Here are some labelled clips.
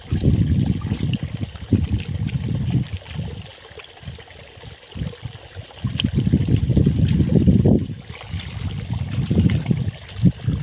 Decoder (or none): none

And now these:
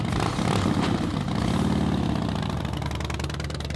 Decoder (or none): none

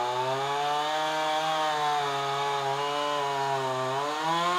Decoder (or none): none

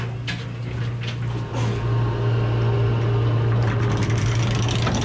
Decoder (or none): none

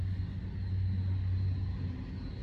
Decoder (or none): none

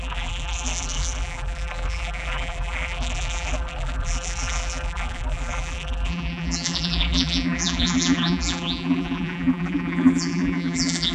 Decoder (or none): vocoder, BigVGAN v2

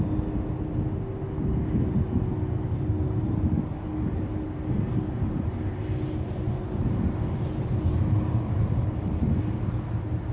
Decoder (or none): none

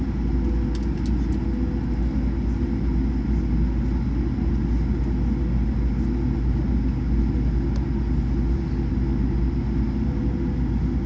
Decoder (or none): none